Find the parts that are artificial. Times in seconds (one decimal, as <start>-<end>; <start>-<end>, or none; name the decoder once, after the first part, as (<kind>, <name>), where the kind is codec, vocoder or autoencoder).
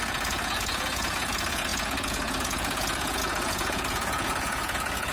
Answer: 0.0-5.1 (vocoder, Vocos)